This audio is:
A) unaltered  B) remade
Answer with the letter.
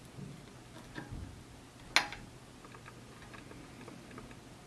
A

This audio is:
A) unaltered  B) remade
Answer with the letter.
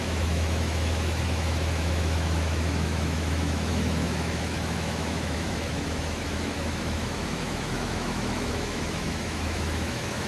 B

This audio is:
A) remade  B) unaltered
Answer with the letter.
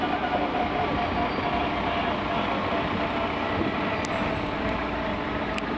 B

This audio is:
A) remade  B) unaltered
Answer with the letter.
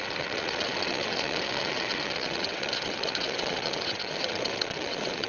A